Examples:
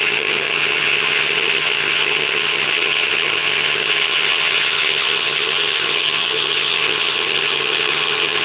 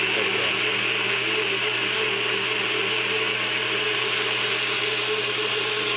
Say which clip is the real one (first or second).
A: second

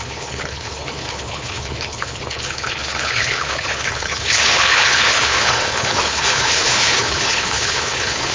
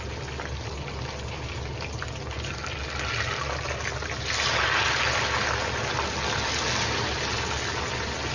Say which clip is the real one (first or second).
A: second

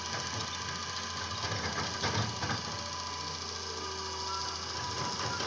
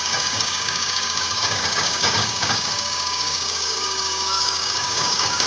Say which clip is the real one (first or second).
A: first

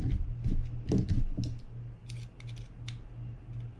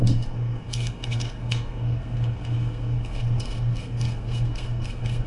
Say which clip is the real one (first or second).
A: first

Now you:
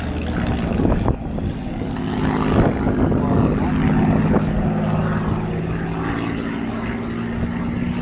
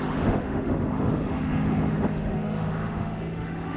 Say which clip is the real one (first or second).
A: first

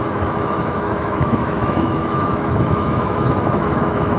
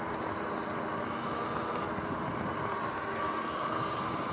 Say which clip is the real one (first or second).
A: second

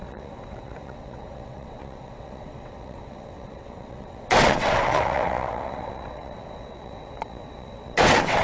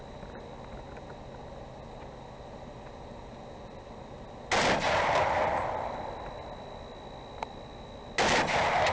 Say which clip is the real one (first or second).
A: second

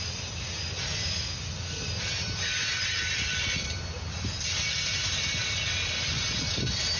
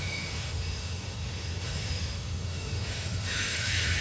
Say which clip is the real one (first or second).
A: first